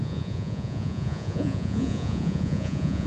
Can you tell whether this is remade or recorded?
remade